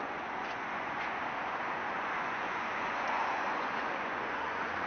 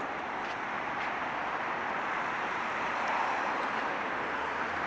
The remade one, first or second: first